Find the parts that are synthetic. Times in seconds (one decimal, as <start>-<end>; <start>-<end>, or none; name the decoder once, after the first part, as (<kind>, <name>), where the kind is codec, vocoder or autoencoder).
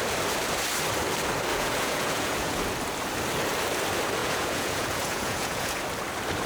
1.5-2.6 (vocoder, Vocos); 4.2-5.8